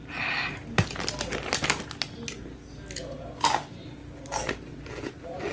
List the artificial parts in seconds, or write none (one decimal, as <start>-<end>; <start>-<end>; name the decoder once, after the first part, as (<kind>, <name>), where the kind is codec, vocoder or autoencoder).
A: none